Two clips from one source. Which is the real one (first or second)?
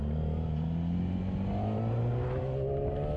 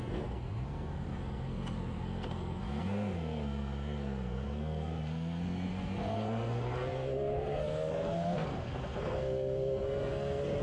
first